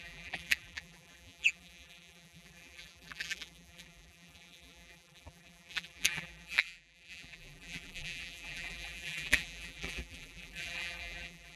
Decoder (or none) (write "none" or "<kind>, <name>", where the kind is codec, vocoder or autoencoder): vocoder, BigVGAN v2